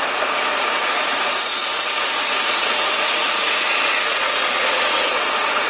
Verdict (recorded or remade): remade